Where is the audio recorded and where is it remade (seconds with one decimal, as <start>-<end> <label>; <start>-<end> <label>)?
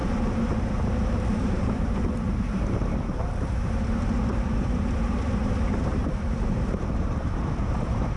0.0-8.2 remade